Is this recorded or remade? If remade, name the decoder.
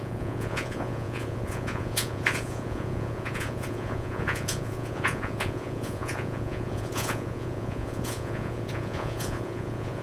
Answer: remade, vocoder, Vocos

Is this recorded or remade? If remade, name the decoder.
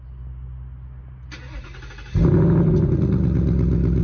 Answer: recorded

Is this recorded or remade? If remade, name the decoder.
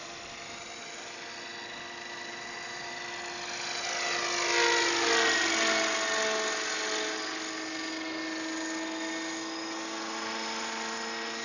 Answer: recorded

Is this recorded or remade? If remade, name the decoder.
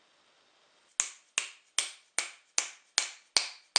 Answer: recorded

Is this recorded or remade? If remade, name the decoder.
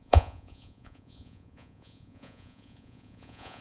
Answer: remade, vocoder, Vocos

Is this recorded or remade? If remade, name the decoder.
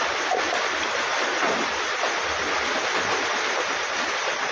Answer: recorded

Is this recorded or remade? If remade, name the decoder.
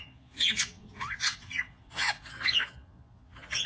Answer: remade, vocoder, Vocos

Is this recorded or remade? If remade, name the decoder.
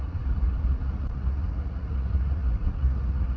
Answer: remade, vocoder, Vocos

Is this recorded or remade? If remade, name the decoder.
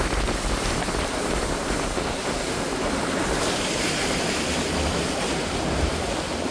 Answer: recorded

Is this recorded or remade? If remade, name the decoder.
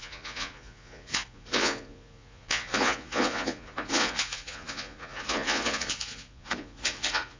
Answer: remade, vocoder, Vocos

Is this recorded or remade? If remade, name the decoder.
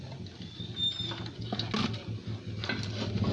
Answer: recorded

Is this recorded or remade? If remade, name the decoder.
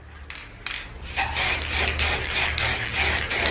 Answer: recorded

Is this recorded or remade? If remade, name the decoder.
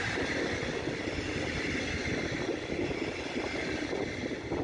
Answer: recorded